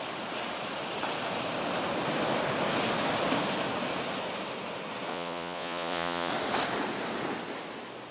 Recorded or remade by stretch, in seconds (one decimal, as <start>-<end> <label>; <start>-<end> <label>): 0.0-5.1 recorded; 5.1-6.3 remade; 6.3-8.1 recorded

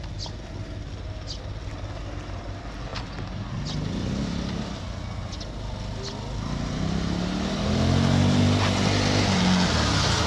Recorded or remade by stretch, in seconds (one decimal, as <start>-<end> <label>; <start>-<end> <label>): 0.0-10.3 recorded

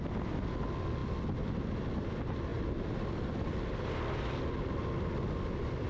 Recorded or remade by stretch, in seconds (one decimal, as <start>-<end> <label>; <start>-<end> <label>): 0.0-5.9 recorded